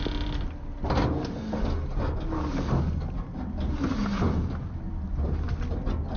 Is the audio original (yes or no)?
yes